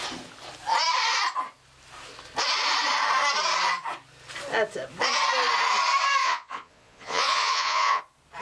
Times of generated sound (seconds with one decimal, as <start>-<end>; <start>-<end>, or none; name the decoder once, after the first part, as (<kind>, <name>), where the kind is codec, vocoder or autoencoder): 6.2-8.0 (vocoder, Vocos)